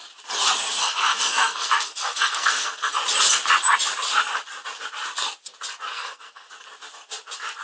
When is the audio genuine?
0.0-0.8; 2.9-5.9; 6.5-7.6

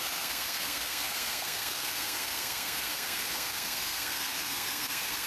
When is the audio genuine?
none

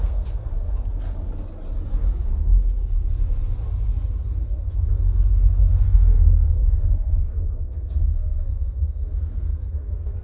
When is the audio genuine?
0.5-4.9

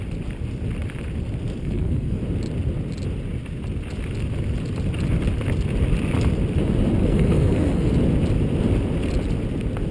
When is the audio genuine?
0.0-1.6; 2.2-7.0; 7.9-9.9

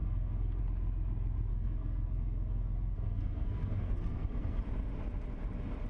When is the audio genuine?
0.6-1.5; 4.6-5.9

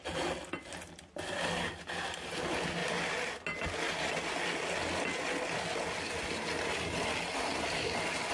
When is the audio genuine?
0.0-8.3

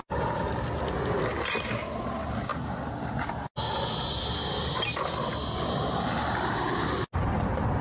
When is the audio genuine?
0.0-7.8

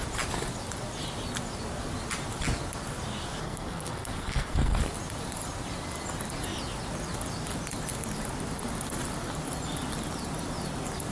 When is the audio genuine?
0.0-3.4; 4.8-11.1